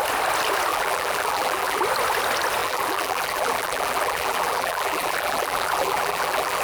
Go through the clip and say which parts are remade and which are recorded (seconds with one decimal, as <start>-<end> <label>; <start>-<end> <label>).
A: 0.0-0.7 recorded; 0.7-1.8 remade; 1.8-2.6 recorded; 2.6-6.6 remade

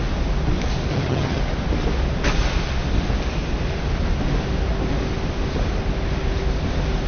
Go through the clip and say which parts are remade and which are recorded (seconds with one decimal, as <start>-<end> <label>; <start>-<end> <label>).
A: 0.0-0.9 recorded; 0.9-1.4 remade; 1.4-7.1 recorded

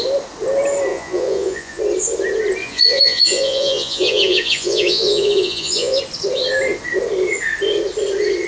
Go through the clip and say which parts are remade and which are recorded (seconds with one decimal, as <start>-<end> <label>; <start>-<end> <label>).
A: 0.0-0.9 recorded; 0.9-1.8 remade; 1.8-2.6 recorded; 2.6-6.0 remade; 6.0-8.5 recorded

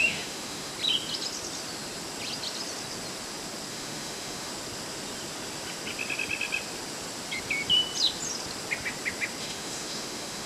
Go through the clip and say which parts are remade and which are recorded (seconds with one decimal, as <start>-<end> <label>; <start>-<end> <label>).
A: 0.0-0.7 remade; 0.7-3.7 recorded; 3.7-4.5 remade; 4.5-9.4 recorded; 9.4-10.5 remade

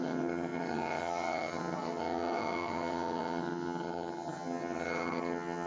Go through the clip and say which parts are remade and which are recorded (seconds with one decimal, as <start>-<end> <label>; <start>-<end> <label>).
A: 0.0-5.7 remade

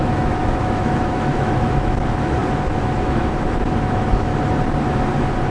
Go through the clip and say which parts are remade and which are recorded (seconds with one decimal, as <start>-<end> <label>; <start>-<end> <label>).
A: 0.0-4.3 remade; 4.3-5.5 recorded